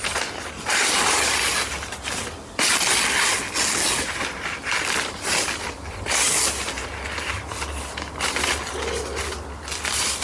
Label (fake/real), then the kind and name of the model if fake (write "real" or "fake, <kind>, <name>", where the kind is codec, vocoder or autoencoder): real